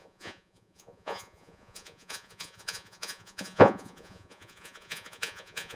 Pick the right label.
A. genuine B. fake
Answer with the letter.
B